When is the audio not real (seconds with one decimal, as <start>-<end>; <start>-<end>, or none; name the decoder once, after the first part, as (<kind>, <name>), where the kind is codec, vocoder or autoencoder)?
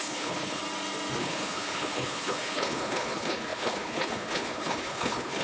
0.0-0.6 (codec, HILCodec); 1.2-5.4